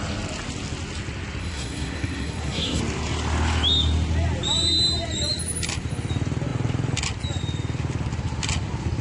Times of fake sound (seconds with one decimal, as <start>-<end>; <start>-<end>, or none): 1.4-2.8